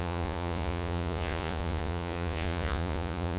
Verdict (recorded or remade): remade